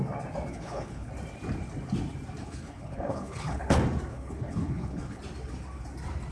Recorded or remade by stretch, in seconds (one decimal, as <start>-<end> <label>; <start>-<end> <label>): 0.0-0.5 recorded; 0.5-1.1 remade; 1.1-2.4 recorded; 2.4-3.6 remade; 3.6-4.1 recorded; 4.1-5.2 remade; 5.2-6.3 recorded